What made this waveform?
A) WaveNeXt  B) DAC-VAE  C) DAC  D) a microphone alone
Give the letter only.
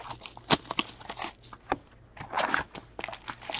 D